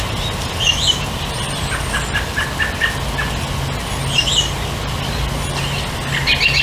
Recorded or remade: recorded